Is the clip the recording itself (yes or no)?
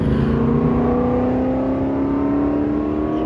yes